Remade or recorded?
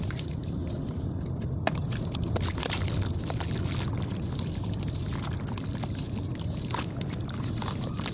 recorded